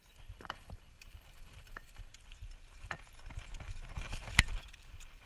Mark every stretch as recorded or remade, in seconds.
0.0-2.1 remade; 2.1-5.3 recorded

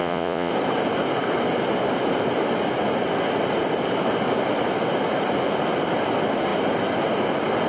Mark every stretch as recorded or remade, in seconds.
0.0-0.5 remade; 0.5-7.7 recorded

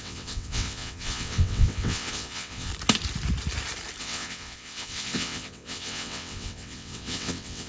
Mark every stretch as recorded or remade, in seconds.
0.0-2.7 remade; 2.7-4.0 recorded; 4.0-7.7 remade

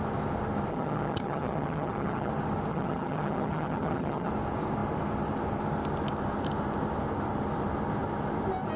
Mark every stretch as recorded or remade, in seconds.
0.0-0.7 recorded; 0.7-2.3 remade; 2.3-2.7 recorded; 2.7-4.3 remade; 4.3-8.8 recorded

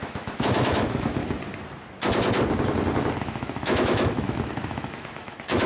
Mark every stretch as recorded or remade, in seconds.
0.0-1.2 remade; 1.2-3.2 recorded; 3.2-5.7 remade

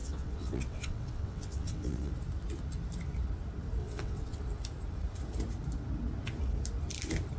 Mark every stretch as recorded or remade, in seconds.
0.0-2.1 remade; 2.1-3.8 recorded; 3.8-4.4 remade; 4.4-7.4 recorded